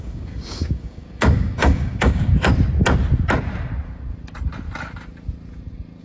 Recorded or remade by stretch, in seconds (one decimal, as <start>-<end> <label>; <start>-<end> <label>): 0.0-2.3 remade; 2.3-6.0 recorded